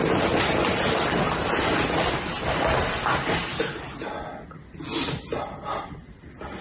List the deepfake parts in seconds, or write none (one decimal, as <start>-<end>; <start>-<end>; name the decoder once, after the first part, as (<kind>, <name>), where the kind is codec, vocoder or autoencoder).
none